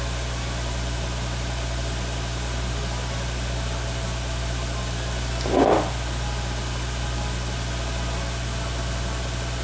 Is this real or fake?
real